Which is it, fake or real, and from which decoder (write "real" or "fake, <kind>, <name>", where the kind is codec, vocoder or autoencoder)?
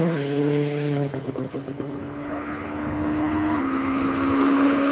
fake, codec, HILCodec